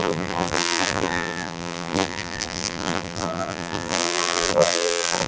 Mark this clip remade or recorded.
remade